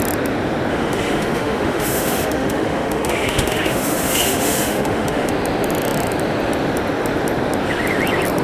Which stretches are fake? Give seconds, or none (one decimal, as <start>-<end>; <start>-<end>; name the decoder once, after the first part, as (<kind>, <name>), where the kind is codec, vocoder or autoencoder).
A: 0.7-5.3 (autoencoder, DAC-VAE)

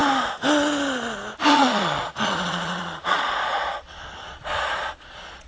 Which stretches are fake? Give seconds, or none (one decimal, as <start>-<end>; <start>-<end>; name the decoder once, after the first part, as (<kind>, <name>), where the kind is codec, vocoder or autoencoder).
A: 1.5-5.5 (vocoder, Vocos)

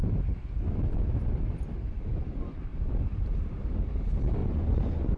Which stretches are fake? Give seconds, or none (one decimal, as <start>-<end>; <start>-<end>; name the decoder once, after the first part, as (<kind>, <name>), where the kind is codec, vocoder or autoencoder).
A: 4.4-5.2 (vocoder, Vocos)